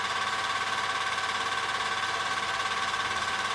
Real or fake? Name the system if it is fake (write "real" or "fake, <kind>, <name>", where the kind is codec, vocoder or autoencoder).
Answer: real